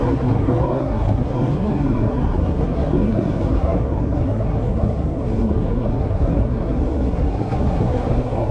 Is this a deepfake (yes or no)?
yes